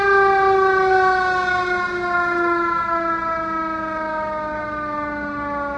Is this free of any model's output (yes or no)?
yes